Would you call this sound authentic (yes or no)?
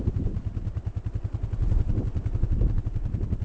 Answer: yes